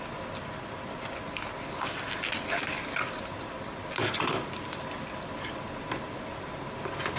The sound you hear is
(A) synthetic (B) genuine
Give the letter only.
B